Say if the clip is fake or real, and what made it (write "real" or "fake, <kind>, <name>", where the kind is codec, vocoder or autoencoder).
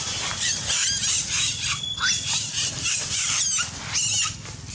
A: real